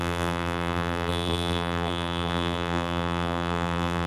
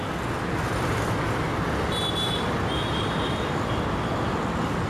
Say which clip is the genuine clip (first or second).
second